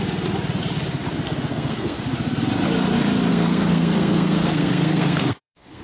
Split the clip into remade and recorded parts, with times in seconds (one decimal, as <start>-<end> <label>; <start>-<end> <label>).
0.0-1.5 recorded; 1.5-2.0 remade; 2.0-3.3 recorded; 3.3-5.8 remade